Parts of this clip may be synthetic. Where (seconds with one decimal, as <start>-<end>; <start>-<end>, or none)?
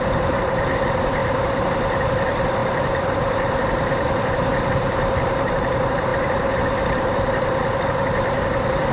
0.0-1.2; 2.1-8.9